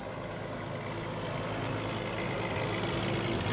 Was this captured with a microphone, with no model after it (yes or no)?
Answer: yes